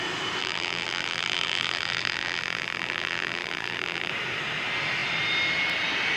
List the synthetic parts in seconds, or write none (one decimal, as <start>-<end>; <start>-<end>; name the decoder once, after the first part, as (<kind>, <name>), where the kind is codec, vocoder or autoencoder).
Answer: 0.4-4.1 (vocoder, BigVGAN v2)